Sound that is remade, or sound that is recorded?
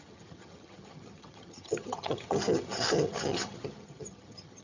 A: remade